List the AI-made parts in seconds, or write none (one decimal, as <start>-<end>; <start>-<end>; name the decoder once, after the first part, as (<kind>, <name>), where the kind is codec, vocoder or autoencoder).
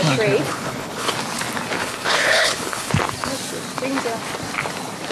0.5-1.1 (codec, HILCodec); 1.8-2.9